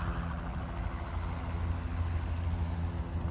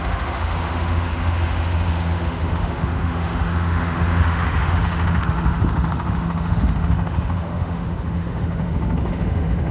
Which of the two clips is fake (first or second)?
second